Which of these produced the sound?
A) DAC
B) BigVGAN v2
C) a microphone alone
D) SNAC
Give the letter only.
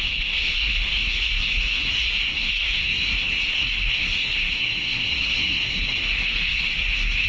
D